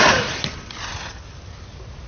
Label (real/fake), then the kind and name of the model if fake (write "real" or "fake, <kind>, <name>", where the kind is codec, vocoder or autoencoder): real